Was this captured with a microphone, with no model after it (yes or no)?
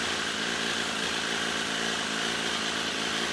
yes